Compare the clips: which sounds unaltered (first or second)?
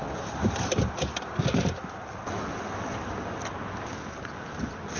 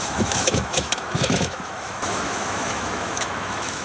first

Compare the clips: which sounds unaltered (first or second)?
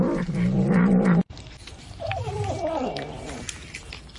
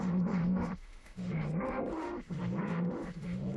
first